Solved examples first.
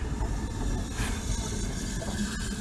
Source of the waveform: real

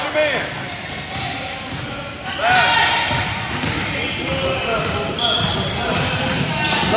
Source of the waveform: real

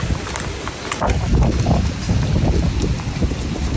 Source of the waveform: real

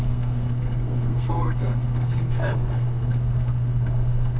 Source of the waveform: fake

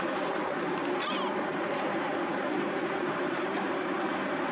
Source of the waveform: fake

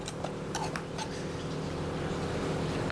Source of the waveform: real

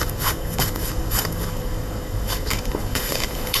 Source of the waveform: fake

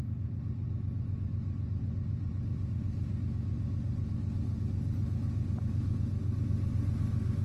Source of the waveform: real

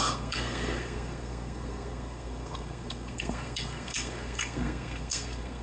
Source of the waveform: fake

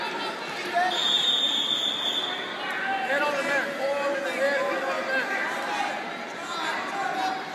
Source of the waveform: real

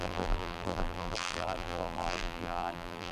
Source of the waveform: fake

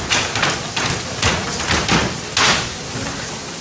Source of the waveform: real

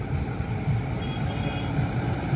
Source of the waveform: real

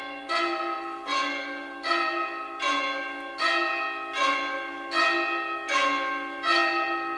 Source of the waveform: real